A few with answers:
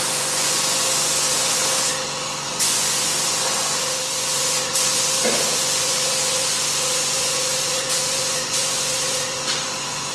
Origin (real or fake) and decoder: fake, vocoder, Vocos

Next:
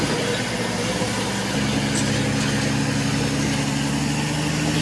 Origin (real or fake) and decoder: real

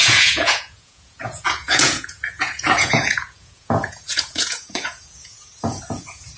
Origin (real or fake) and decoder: fake, vocoder, Vocos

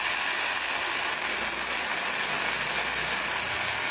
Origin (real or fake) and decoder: real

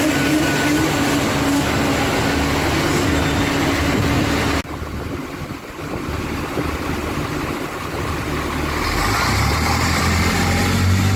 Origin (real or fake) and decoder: real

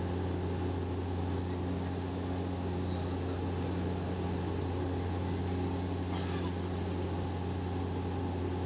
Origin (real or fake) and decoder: real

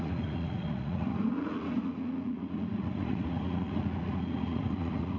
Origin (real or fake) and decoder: fake, vocoder, Vocos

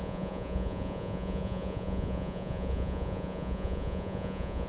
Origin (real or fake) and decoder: fake, vocoder, Vocos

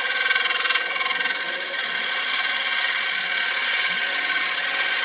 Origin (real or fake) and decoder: fake, vocoder, Vocos